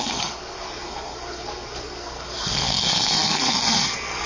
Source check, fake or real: fake